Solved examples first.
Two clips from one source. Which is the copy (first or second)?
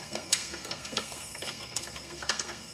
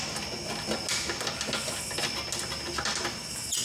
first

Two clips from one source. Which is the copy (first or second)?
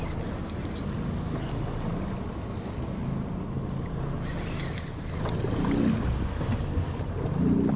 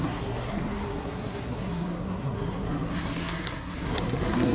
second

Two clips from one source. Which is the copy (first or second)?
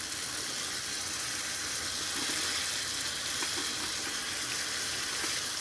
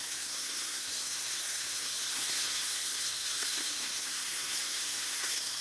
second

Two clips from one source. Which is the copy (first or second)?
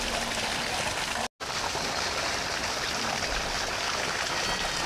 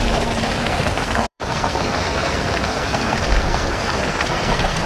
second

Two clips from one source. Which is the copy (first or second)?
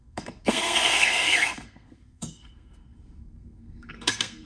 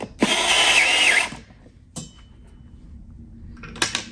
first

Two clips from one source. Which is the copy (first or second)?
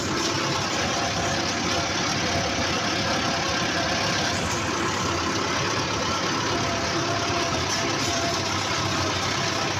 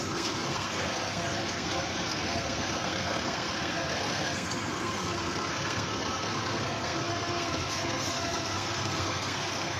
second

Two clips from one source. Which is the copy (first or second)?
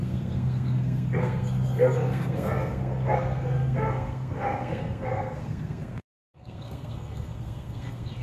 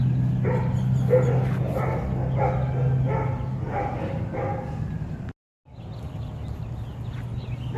first